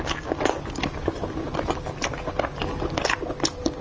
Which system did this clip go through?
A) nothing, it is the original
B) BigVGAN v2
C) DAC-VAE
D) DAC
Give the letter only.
A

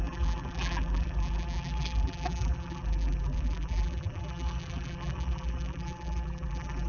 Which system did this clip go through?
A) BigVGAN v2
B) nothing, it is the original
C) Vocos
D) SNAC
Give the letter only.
A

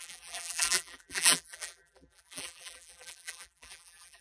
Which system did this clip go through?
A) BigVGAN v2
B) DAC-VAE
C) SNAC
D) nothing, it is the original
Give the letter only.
A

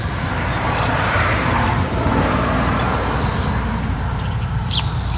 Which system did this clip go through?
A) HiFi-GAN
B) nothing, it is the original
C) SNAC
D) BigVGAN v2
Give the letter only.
D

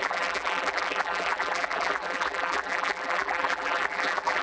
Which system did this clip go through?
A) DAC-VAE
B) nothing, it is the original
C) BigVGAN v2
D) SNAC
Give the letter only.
C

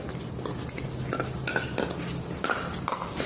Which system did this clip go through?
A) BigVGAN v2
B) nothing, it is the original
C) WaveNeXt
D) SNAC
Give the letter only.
B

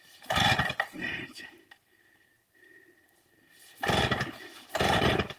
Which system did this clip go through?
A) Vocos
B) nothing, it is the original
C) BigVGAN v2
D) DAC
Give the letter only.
C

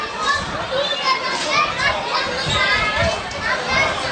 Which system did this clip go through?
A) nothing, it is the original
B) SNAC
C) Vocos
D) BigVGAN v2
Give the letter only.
A